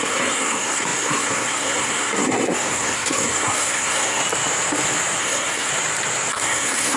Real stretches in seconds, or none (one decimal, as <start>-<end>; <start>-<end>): 4.2-5.2; 5.7-6.3